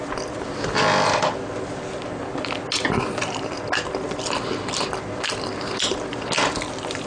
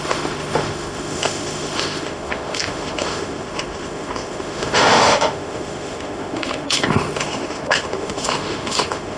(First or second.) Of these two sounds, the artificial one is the second